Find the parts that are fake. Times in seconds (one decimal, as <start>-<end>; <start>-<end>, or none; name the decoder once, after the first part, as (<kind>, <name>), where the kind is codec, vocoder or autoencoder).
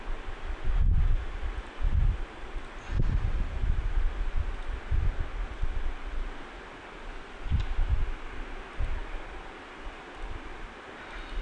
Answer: none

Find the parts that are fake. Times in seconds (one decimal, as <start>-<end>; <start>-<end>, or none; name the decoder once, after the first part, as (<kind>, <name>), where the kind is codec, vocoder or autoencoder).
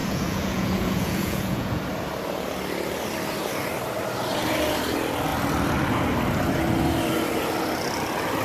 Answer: 0.0-1.8 (vocoder, Vocos)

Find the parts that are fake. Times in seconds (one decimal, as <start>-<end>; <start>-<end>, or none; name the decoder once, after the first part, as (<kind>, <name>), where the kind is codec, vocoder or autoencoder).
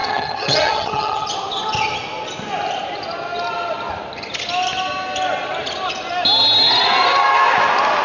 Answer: 0.0-1.3 (vocoder, HiFi-GAN)